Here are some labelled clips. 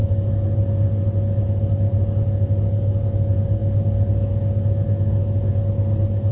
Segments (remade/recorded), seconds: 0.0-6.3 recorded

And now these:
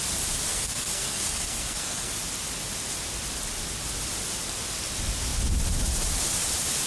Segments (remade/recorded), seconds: 0.0-0.5 recorded; 0.5-2.1 remade; 2.1-6.9 recorded

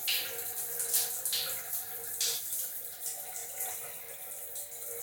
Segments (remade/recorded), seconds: 0.0-5.0 recorded

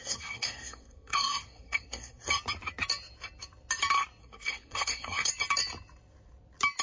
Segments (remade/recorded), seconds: 0.0-2.3 remade; 2.3-4.2 recorded; 4.2-5.3 remade; 5.3-6.8 recorded

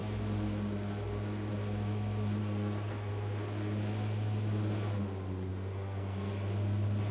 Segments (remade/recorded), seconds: 0.0-2.4 recorded; 2.4-3.1 remade; 3.1-5.5 recorded; 5.5-6.3 remade; 6.3-7.1 recorded

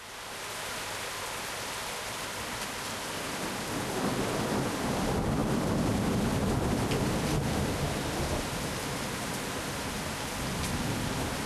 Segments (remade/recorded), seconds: 0.0-11.5 recorded